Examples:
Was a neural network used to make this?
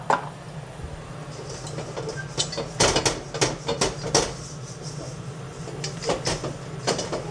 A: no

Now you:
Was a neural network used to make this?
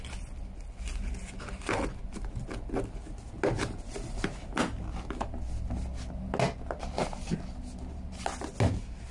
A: no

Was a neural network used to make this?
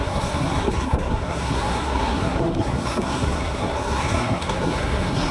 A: yes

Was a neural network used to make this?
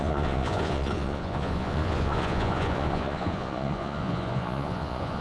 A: yes